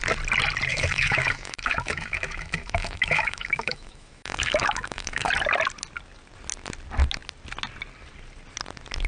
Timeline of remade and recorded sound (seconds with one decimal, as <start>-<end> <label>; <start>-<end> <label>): 0.0-0.7 recorded; 0.7-5.3 remade; 5.3-9.1 recorded